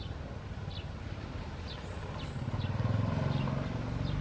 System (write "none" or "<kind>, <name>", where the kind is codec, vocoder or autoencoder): none